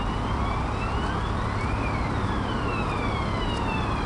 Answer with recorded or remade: recorded